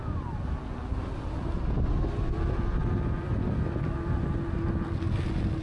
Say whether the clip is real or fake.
real